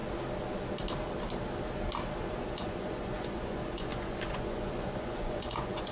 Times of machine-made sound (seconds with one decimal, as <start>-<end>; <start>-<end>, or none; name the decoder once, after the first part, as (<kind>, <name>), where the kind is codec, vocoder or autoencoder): 2.4-5.9 (vocoder, Vocos)